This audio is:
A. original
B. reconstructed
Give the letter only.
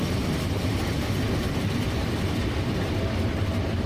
A